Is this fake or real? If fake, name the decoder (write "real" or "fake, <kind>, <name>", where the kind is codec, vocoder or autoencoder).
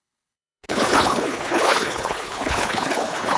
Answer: fake, codec, HILCodec